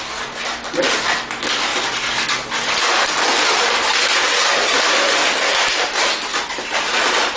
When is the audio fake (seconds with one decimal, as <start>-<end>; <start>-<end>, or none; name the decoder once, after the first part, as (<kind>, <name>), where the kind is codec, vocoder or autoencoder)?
none